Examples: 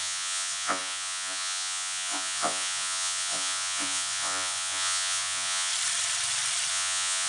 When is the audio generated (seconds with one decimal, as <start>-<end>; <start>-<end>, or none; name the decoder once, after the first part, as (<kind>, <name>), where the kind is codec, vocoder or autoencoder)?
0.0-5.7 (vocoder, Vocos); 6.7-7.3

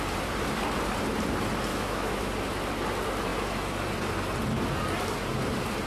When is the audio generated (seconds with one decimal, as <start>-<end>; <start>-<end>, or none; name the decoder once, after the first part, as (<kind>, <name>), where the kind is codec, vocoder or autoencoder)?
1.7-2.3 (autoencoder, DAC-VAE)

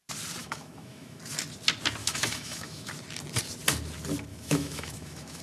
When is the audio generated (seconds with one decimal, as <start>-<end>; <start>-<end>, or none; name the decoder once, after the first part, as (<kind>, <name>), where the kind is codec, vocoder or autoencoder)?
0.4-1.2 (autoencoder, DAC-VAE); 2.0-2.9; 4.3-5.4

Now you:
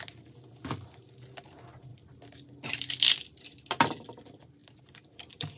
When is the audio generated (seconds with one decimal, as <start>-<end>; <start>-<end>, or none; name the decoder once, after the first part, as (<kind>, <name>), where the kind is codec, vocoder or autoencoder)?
1.9-3.1 (vocoder, BigVGAN v2); 4.6-5.6

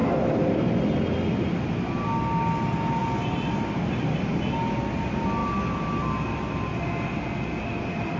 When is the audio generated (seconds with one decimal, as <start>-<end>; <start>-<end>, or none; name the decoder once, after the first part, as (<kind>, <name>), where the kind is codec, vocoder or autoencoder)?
none